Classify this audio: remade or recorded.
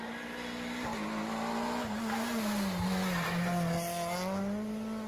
recorded